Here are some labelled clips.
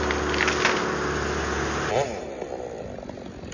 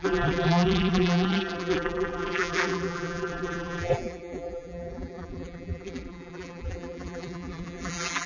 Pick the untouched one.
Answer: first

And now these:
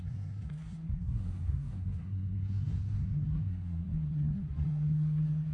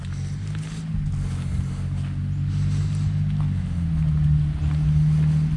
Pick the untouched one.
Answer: second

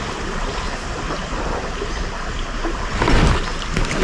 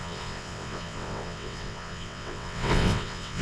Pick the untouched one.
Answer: first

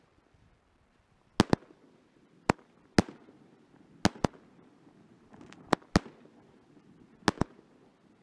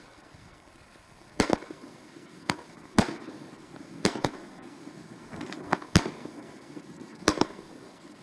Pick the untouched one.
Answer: first